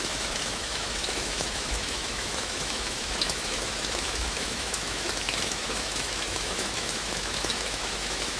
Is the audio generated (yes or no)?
yes